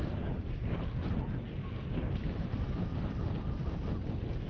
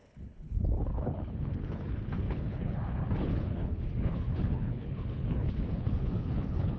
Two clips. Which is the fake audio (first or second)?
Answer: second